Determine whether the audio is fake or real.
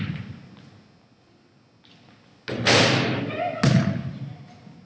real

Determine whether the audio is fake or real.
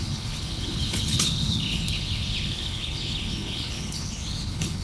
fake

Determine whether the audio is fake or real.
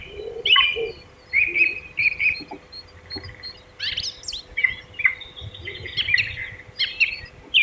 real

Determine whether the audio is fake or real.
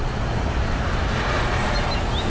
fake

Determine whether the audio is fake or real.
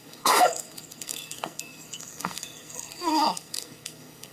fake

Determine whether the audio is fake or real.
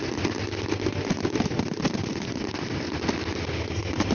real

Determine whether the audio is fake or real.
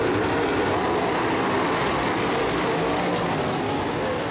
real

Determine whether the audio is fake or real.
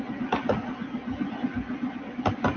real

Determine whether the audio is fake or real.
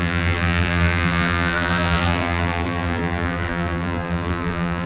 fake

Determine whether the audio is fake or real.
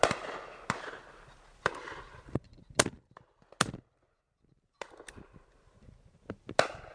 real